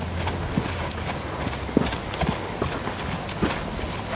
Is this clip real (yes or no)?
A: yes